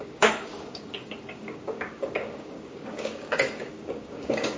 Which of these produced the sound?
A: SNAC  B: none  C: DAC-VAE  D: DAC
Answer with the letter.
D